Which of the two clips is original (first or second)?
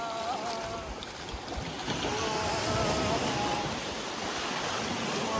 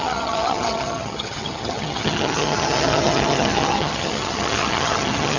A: first